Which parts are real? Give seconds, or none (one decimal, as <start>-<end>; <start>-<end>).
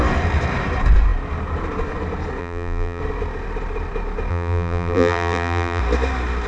0.0-2.4; 3.0-4.3; 5.8-6.5